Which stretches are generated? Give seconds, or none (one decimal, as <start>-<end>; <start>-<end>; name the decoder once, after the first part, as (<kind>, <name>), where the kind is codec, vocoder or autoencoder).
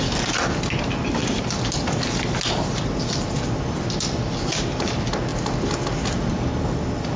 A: none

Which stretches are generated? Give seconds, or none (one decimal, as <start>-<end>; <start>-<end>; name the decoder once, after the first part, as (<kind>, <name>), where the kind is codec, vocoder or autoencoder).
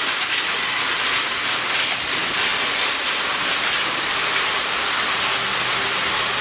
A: 2.5-5.0 (vocoder, BigVGAN v2)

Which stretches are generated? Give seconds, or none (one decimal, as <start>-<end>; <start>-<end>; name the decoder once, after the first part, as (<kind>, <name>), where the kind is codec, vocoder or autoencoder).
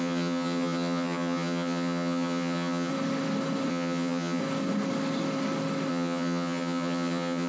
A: 0.0-2.9 (vocoder, HiFi-GAN); 3.7-4.4; 5.9-7.5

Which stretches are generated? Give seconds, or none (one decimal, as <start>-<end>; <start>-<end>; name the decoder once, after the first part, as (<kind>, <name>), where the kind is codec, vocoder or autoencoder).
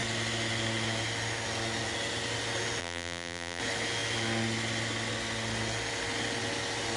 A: 2.8-3.6 (vocoder, BigVGAN v2)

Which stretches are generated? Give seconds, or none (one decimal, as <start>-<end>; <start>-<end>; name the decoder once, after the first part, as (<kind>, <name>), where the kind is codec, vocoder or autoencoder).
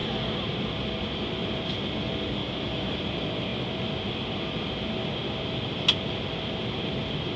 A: 2.4-3.0 (autoencoder, DAC-VAE)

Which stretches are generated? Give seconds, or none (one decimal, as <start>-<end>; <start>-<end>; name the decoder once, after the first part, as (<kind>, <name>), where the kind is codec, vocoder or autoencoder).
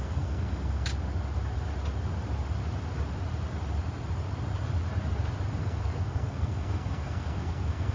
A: 0.0-0.9 (codec, SNAC); 5.6-7.9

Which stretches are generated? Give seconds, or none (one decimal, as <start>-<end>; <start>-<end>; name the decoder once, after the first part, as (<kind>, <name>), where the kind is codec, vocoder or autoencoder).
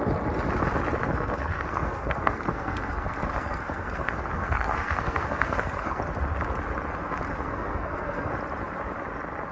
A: 1.0-6.0 (codec, SNAC); 7.3-8.3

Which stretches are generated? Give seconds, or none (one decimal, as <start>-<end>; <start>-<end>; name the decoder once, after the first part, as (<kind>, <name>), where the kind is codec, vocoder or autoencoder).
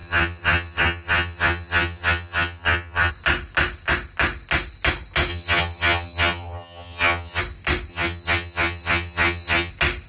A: 0.0-3.1 (vocoder, HiFi-GAN); 5.3-7.4; 7.9-9.7